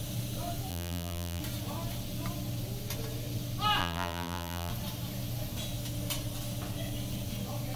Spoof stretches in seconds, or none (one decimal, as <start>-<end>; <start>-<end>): 0.7-1.4; 3.8-4.7